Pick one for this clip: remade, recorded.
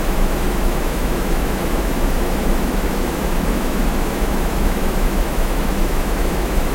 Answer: remade